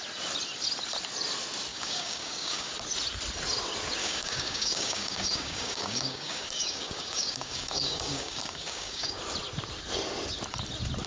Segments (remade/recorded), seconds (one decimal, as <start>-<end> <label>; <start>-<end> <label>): 0.0-1.7 recorded; 1.7-2.7 remade; 2.7-4.0 recorded; 4.0-9.2 remade; 9.2-11.1 recorded